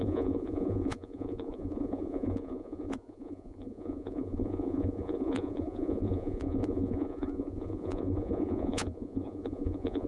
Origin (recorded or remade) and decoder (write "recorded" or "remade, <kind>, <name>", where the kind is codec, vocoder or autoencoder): remade, vocoder, Vocos